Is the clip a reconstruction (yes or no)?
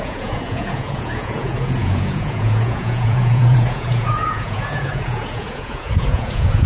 yes